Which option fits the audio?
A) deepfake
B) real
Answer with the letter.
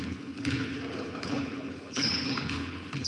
A